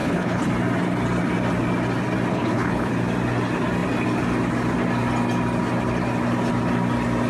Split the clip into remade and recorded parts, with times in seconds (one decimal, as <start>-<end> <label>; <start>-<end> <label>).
0.0-0.5 remade; 0.5-2.3 recorded; 2.3-2.9 remade; 2.9-7.3 recorded